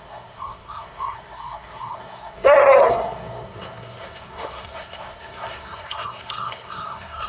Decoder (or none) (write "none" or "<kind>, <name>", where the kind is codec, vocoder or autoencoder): codec, SNAC